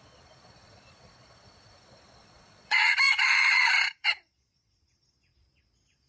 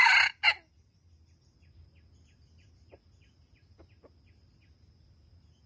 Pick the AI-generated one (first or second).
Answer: first